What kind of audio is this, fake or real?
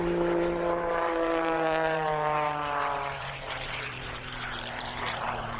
fake